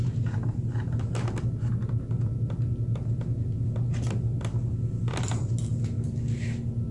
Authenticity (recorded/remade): recorded